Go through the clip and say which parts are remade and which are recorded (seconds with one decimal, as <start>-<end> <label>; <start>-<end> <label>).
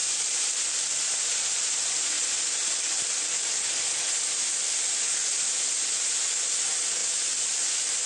0.0-1.9 remade; 1.9-8.1 recorded